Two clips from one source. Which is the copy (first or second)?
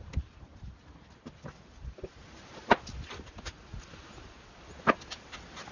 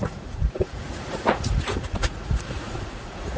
second